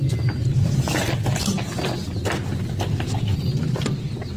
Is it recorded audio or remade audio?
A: recorded